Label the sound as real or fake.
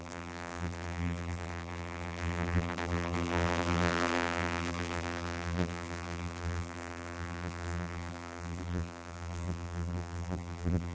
fake